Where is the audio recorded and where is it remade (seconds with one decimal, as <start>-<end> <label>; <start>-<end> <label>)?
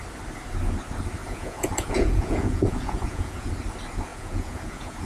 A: 0.0-1.2 recorded; 1.2-3.5 remade; 3.5-4.1 recorded; 4.1-5.1 remade